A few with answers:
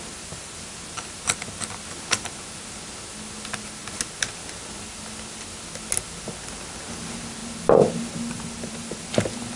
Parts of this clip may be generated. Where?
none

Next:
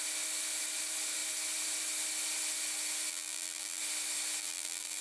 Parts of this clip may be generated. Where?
3.1-3.8 (vocoder, BigVGAN v2); 4.4-5.0

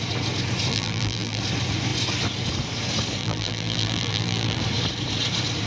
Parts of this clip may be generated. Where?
0.7-1.4 (vocoder, BigVGAN v2); 3.2-4.6

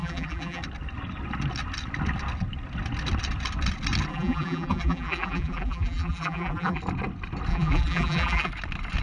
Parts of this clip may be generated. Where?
0.0-0.6 (vocoder, BigVGAN v2); 4.1-6.8; 7.5-8.5

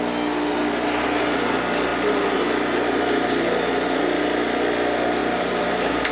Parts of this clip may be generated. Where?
5.2-6.1 (vocoder, BigVGAN v2)

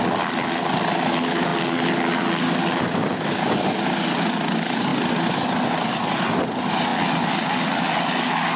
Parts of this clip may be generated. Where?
none

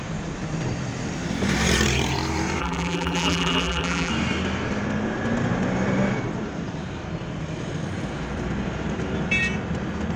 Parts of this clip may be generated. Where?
2.6-4.1 (vocoder, BigVGAN v2)